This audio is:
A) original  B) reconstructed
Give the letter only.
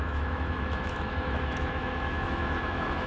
B